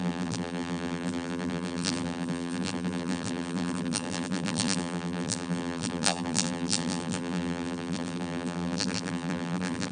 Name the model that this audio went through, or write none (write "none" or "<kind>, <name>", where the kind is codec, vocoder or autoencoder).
vocoder, BigVGAN v2